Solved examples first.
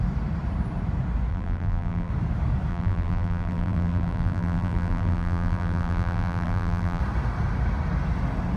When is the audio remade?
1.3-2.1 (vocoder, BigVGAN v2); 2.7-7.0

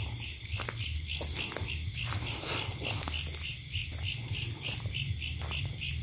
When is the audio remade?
none

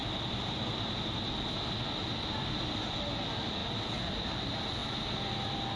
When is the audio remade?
none

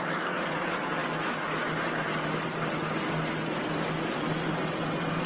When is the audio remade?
none

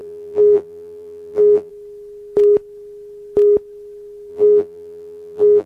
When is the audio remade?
0.0-1.7 (vocoder, BigVGAN v2); 4.3-5.7